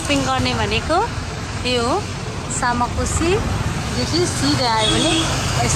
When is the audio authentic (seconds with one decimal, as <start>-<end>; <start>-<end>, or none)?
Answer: 2.1-3.8